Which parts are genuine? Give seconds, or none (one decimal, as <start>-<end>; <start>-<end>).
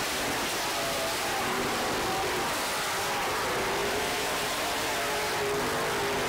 0.0-1.2; 1.9-3.8; 4.9-6.3